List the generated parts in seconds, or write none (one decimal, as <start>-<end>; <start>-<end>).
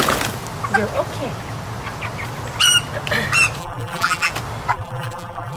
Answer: 3.6-4.3; 4.7-5.6